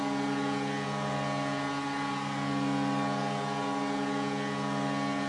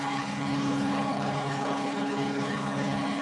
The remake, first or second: second